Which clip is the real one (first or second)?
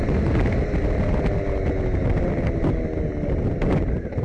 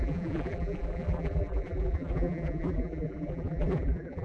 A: first